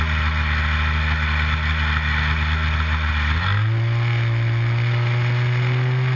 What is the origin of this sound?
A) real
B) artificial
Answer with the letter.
A